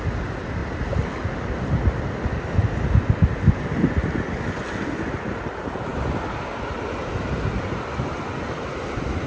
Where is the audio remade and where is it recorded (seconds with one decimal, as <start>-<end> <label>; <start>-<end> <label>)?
0.0-9.3 recorded